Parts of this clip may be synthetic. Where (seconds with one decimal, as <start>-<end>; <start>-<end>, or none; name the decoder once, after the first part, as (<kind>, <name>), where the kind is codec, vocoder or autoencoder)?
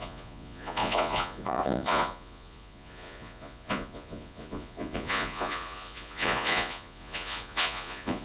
0.0-8.2 (vocoder, Vocos)